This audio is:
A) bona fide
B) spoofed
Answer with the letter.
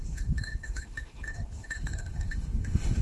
B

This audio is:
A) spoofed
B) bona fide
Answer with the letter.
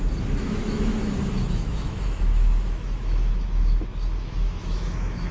A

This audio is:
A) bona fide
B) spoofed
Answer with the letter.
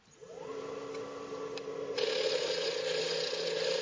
A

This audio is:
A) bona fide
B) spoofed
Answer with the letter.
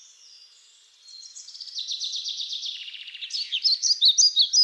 A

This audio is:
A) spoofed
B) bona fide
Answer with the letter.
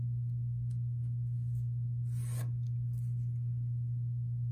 B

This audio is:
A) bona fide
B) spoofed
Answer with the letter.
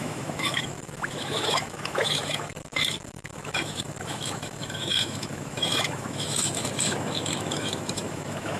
B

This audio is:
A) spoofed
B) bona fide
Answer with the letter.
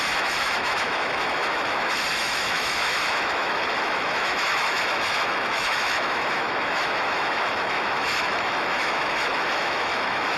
A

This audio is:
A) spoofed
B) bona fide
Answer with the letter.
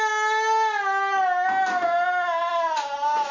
B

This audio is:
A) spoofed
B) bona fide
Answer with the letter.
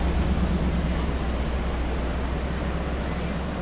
B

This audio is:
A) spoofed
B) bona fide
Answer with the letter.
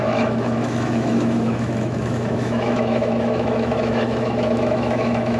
A